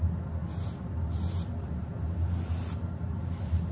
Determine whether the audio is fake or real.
real